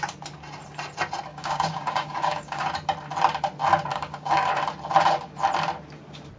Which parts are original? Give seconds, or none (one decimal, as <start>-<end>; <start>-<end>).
0.0-1.3; 2.7-3.9; 4.5-6.4

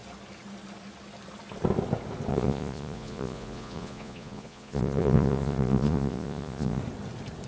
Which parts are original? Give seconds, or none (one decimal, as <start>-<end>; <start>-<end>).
0.0-2.3; 6.8-7.5

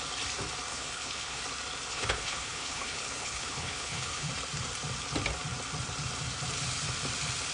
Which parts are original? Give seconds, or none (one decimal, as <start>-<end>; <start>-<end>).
0.0-0.7; 1.4-1.9; 4.3-7.5

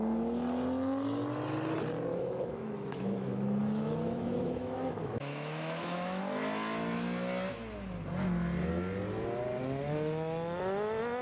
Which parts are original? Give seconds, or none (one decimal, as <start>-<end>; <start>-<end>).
0.0-2.1; 6.2-11.2

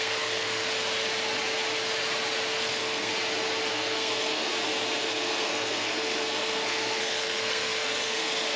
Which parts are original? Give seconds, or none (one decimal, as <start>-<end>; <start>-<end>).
0.6-2.6; 3.1-3.7; 4.5-5.0

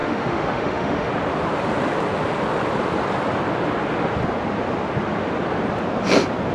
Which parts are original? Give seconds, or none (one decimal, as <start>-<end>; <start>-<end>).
1.1-6.5

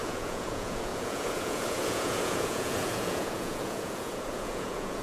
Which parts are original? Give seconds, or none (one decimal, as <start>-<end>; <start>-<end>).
none